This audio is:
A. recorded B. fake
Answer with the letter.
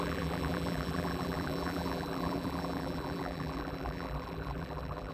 B